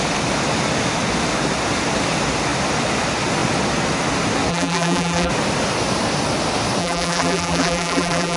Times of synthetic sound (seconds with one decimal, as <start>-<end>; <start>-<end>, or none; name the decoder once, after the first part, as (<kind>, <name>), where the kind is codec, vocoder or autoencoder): 4.5-5.3 (vocoder, BigVGAN v2); 6.8-8.4